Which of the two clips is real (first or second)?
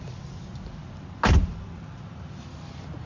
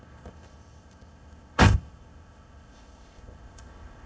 first